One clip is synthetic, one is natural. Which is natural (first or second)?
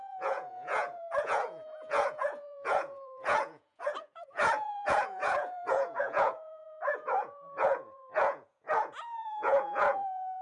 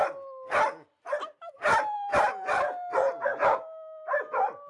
second